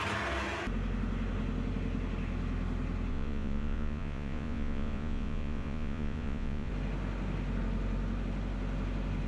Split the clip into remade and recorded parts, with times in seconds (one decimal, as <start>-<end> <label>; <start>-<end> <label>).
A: 0.0-3.1 recorded; 3.1-6.7 remade; 6.7-9.3 recorded